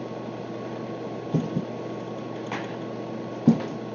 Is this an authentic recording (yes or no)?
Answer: yes